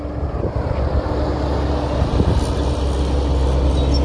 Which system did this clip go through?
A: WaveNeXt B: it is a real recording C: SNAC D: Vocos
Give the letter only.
B